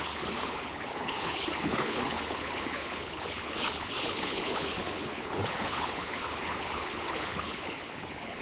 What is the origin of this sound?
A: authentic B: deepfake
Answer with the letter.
B